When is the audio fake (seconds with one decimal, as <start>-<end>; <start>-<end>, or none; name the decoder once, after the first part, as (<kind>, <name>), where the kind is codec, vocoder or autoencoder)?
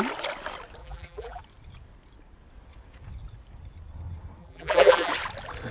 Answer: 0.8-1.4 (vocoder, BigVGAN v2); 4.4-5.1